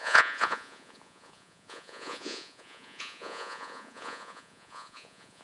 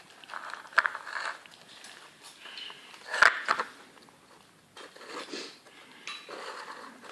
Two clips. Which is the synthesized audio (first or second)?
first